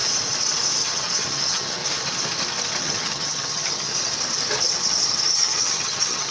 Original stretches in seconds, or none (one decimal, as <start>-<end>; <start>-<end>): 0.0-0.8; 1.8-2.8; 3.9-5.3